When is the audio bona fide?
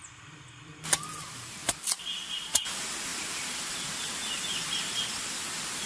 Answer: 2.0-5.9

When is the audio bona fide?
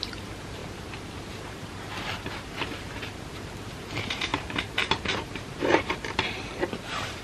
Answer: 0.6-1.5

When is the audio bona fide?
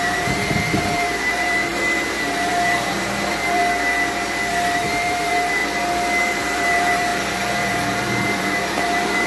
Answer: 3.6-4.5; 5.6-6.2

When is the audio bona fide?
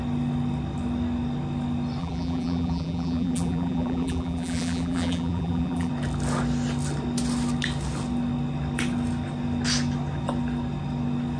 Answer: 0.0-2.0; 5.9-11.4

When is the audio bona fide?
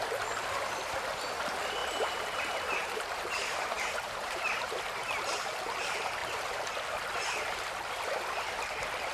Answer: 0.0-1.8; 4.8-9.1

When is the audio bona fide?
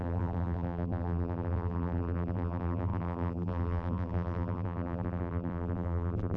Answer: none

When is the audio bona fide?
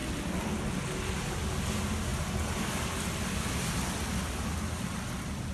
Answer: 0.0-2.1; 2.6-5.5